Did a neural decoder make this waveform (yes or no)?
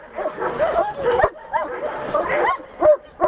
no